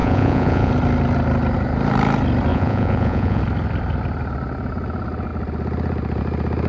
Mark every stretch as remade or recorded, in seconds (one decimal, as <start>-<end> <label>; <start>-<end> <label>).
0.0-0.7 remade; 0.7-2.5 recorded; 2.5-3.4 remade; 3.4-6.7 recorded